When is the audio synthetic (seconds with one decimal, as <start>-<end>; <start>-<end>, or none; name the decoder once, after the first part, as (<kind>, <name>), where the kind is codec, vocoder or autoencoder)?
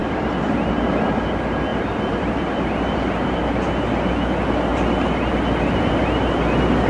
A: 0.0-0.9 (vocoder, BigVGAN v2); 1.7-3.1; 4.7-5.3